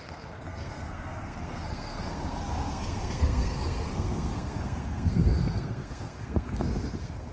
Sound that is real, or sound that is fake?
fake